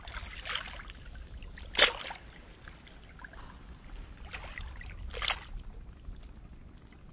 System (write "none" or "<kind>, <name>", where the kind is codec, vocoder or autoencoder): none